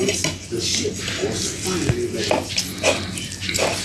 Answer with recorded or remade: recorded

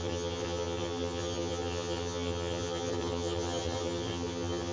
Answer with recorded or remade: remade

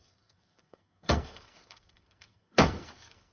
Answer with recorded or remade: remade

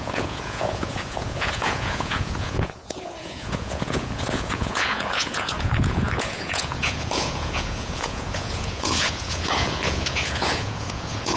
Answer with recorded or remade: remade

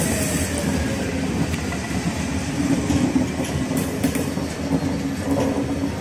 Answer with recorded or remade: recorded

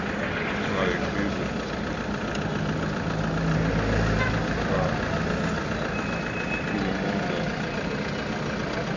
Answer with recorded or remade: recorded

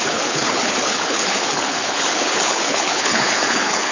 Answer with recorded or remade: remade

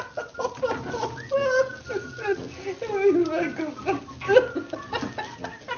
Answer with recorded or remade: recorded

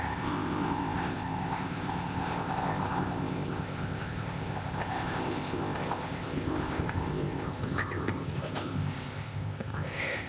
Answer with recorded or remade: remade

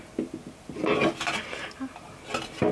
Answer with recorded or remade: recorded